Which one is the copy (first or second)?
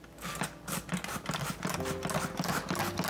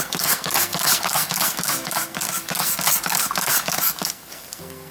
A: second